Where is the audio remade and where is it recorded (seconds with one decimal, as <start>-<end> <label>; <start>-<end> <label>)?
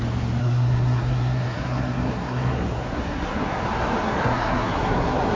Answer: 0.0-0.4 recorded; 0.4-3.6 remade; 3.6-4.0 recorded; 4.0-5.4 remade